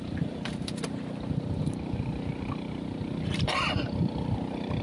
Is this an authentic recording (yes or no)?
no